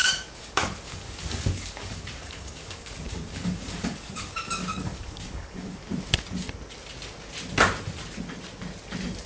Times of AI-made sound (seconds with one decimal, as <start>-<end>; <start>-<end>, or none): 0.0-5.8